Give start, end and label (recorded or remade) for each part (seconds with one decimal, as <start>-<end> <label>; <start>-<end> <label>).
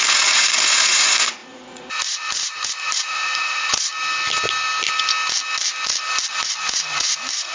0.0-3.9 remade; 3.9-6.3 recorded; 6.3-7.5 remade